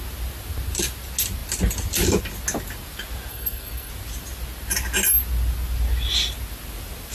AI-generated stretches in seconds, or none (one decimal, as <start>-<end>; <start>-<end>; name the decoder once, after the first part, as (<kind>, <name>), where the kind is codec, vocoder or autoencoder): 3.3-3.9 (codec, SNAC)